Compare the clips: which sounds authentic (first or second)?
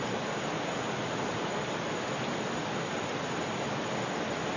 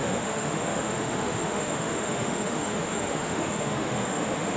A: first